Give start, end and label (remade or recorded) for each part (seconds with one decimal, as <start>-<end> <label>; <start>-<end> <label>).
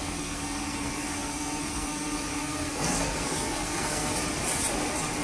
0.0-4.1 remade; 4.1-5.2 recorded